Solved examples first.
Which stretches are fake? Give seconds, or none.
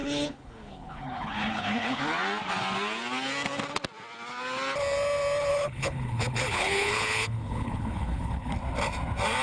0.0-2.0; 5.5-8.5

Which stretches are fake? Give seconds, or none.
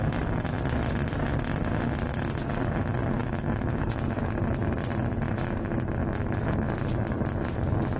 3.2-4.0; 6.0-6.6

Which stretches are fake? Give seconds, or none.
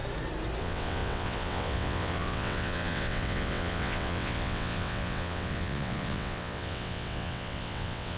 0.6-8.2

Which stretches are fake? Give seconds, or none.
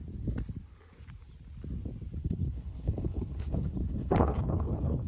2.2-5.1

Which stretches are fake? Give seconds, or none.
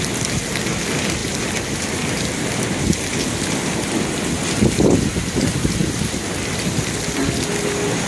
none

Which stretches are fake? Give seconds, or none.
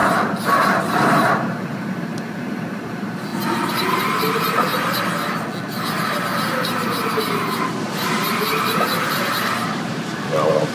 0.8-3.3; 4.0-4.7; 8.4-10.7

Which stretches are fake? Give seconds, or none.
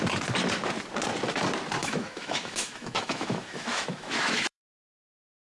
1.8-5.6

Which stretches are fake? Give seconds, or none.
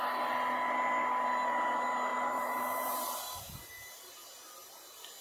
2.1-4.1